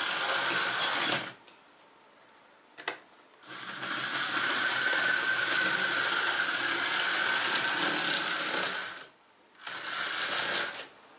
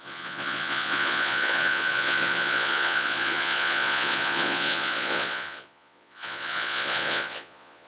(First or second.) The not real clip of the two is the second